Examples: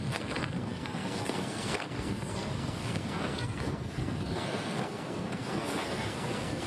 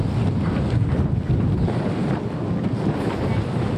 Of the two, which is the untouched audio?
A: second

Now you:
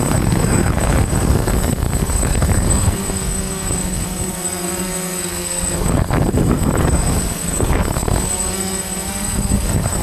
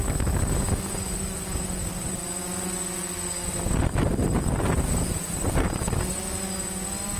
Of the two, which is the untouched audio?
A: second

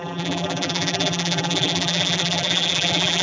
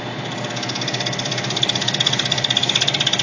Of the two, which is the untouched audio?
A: second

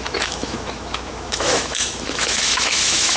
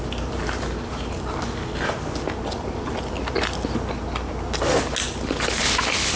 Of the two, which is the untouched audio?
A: second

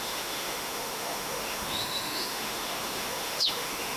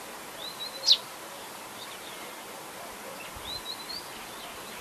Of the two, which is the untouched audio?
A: second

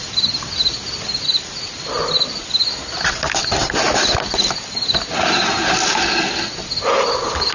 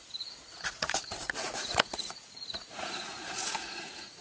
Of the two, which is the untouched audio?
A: first